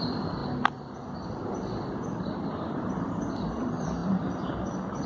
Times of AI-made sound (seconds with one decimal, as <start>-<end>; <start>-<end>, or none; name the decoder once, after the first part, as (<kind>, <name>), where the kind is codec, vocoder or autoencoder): 0.0-0.4 (vocoder, BigVGAN v2); 3.5-5.1